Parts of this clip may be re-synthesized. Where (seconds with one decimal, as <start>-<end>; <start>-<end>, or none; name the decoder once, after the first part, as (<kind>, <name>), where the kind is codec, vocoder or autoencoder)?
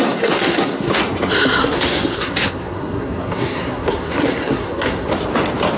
0.0-1.0 (codec, SNAC); 1.6-5.1